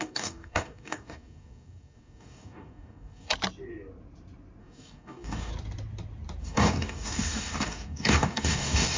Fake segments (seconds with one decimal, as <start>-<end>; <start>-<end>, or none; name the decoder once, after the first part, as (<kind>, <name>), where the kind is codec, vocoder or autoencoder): 0.0-3.3 (codec, DAC); 4.6-5.5; 6.4-9.0